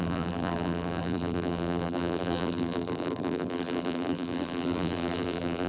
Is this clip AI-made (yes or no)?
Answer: yes